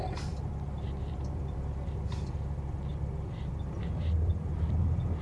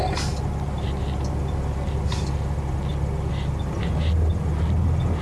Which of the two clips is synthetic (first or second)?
first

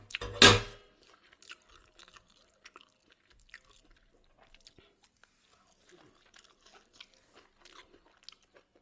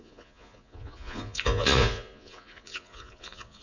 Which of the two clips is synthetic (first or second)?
second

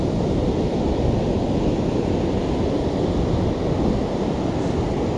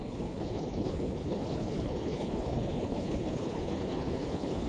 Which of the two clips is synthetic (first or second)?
second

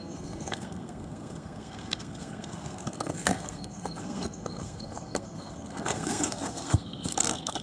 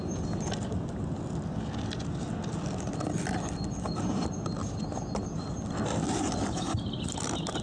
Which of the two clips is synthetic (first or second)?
first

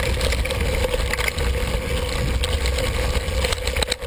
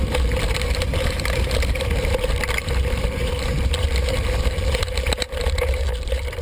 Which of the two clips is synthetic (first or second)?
second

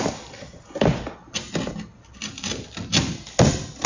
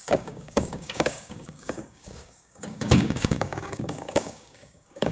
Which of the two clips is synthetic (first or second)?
second